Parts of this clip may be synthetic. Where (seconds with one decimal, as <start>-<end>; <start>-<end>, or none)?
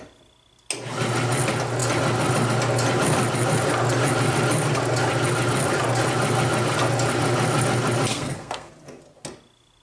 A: 8.1-8.7